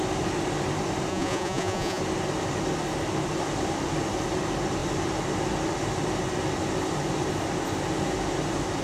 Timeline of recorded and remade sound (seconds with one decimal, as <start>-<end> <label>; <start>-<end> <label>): 0.0-1.1 recorded; 1.1-2.0 remade; 2.0-8.8 recorded